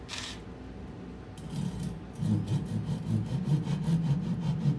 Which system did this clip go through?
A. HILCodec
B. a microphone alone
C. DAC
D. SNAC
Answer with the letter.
B